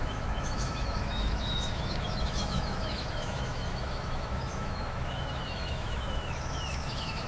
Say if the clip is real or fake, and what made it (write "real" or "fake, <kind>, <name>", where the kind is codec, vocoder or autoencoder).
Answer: fake, autoencoder, DAC-VAE